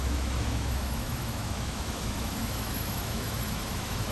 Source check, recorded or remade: remade